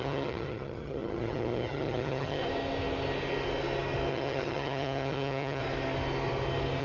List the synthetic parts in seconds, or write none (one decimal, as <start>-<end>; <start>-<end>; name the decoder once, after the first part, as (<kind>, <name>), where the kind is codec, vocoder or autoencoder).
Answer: 0.0-2.4 (vocoder, HiFi-GAN); 4.1-5.6

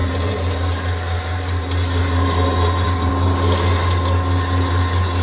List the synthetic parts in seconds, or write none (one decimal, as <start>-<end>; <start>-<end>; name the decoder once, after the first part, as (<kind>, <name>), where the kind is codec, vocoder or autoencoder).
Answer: 0.0-3.1 (vocoder, BigVGAN v2)

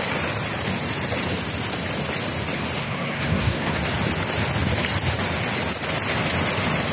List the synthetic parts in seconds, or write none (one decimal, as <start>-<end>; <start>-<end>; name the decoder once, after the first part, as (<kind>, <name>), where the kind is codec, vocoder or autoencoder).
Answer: 2.8-3.8 (codec, SNAC)

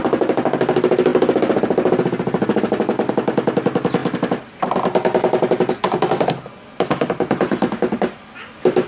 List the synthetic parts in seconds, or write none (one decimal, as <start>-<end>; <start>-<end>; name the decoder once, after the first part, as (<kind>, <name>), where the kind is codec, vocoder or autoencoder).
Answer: none

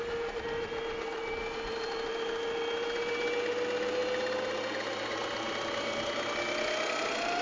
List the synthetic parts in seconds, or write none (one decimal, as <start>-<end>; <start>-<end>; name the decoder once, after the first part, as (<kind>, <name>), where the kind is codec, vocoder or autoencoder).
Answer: none

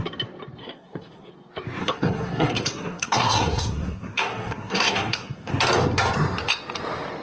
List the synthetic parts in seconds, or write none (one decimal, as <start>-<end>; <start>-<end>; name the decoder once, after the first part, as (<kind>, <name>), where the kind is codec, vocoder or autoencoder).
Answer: 0.6-1.3 (codec, SNAC); 1.8-5.5

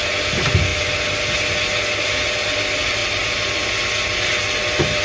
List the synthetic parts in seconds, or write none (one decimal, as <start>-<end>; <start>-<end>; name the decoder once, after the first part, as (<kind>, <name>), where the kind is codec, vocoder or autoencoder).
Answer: 3.0-3.7 (vocoder, BigVGAN v2)

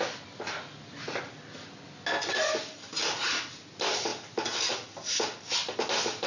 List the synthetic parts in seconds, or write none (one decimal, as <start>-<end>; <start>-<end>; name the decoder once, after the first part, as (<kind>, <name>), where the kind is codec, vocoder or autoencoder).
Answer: 2.9-3.5 (vocoder, BigVGAN v2)